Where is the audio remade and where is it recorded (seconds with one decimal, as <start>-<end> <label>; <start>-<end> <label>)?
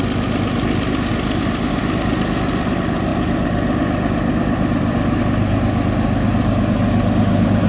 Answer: 0.0-7.7 recorded